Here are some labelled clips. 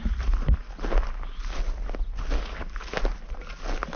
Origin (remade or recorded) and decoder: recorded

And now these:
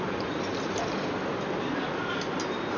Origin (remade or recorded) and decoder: recorded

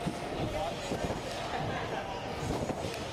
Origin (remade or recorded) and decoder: recorded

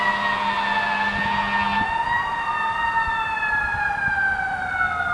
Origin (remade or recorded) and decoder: recorded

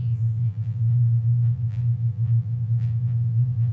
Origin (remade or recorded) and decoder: remade, vocoder, BigVGAN v2